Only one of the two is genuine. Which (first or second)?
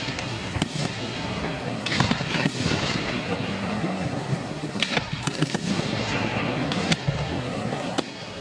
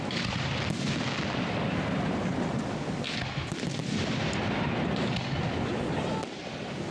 second